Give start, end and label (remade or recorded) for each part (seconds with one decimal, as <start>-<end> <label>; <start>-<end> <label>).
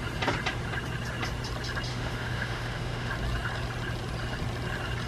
0.0-1.9 recorded; 1.9-3.1 remade; 3.1-5.1 recorded